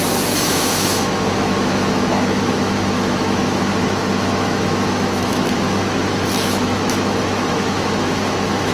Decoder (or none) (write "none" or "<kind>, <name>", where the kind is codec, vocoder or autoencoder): autoencoder, DAC-VAE